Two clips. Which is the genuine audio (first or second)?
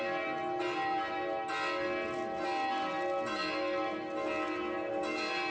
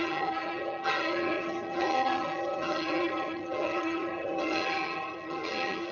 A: first